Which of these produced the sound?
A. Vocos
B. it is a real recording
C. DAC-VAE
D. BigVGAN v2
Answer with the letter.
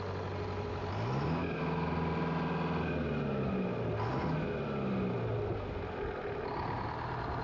B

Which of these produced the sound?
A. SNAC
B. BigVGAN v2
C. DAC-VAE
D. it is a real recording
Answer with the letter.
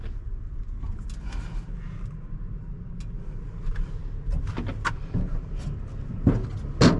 D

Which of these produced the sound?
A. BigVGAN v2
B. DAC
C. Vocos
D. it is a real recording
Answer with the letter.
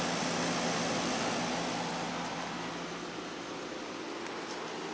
D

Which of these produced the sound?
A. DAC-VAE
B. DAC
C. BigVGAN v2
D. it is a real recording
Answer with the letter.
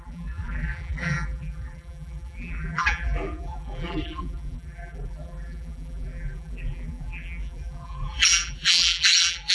C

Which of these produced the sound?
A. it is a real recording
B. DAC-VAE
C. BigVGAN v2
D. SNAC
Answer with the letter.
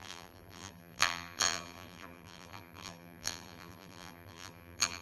C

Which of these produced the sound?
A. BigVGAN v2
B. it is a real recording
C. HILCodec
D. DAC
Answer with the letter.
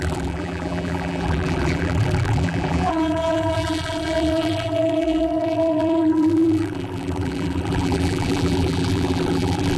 A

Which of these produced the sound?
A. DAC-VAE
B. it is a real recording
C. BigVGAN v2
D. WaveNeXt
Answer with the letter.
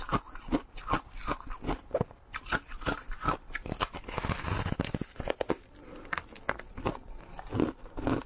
B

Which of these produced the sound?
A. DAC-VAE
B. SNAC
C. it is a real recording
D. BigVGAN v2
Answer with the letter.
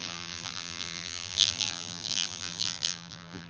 D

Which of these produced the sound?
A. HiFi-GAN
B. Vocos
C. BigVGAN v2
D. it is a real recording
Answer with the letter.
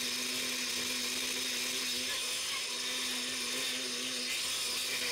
D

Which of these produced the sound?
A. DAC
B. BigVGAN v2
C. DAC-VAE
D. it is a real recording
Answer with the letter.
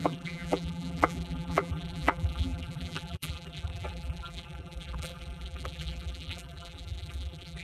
B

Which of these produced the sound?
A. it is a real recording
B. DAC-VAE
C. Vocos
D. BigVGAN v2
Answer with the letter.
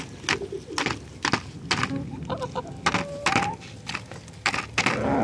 A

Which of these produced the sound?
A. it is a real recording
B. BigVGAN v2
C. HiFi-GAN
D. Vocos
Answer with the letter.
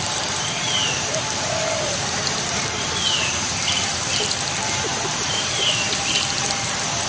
B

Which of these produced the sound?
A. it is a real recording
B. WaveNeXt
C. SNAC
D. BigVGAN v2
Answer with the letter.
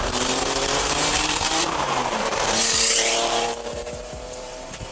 D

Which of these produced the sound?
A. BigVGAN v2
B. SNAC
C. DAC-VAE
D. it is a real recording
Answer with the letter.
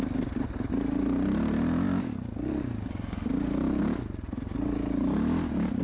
D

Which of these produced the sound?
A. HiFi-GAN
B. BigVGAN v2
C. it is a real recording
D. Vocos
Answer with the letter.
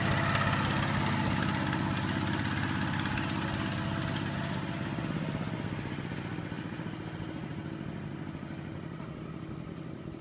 C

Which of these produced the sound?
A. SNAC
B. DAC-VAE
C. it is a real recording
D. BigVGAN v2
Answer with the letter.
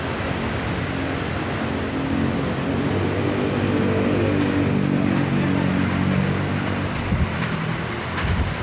C